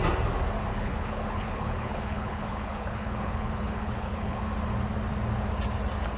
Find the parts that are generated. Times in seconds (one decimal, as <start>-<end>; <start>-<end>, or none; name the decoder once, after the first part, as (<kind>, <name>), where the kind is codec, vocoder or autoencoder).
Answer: 0.7-4.4 (codec, HILCodec)